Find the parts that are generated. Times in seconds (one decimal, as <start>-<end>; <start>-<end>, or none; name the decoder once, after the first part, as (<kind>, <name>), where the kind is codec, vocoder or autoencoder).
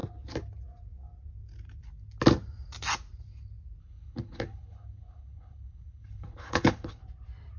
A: 3.8-7.0 (codec, HILCodec)